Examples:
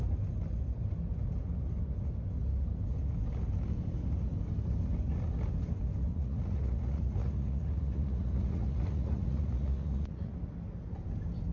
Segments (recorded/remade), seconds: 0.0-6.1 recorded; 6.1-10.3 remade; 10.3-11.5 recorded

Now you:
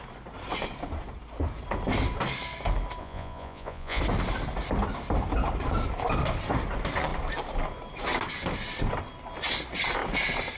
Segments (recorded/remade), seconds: 0.0-3.0 recorded; 3.0-4.0 remade; 4.0-10.6 recorded

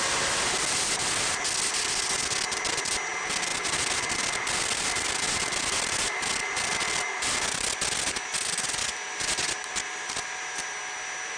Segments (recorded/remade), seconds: 0.0-11.4 recorded

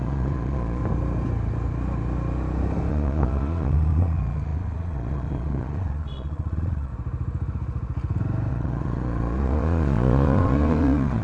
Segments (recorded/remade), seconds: 0.0-0.8 remade; 0.8-2.9 recorded; 2.9-6.9 remade; 6.9-8.5 recorded; 8.5-11.2 remade

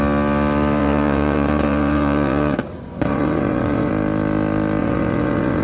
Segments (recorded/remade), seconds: 0.0-0.8 recorded; 0.8-3.9 remade; 3.9-4.8 recorded; 4.8-5.6 remade